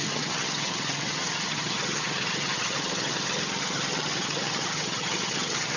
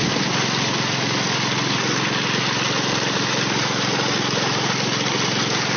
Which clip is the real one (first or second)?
second